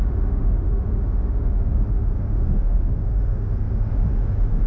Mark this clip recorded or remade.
remade